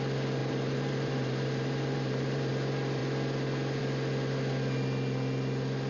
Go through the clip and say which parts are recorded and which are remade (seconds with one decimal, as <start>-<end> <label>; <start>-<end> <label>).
0.0-0.4 recorded; 0.4-2.5 remade; 2.5-5.9 recorded